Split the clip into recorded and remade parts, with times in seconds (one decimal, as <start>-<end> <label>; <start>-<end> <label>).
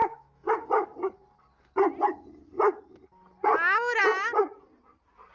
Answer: 0.0-0.5 remade; 0.5-5.3 recorded